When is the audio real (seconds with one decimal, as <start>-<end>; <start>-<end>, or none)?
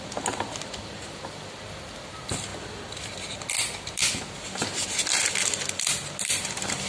0.0-6.9